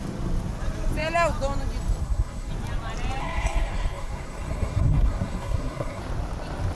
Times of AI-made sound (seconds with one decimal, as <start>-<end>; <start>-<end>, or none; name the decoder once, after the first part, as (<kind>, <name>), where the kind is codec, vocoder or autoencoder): 2.0-2.5 (codec, SNAC); 3.2-6.0